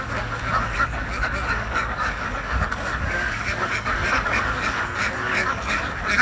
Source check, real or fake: fake